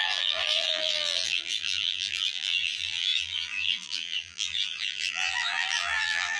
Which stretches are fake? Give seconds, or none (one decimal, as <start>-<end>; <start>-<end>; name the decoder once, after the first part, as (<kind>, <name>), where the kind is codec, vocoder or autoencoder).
0.0-6.4 (vocoder, BigVGAN v2)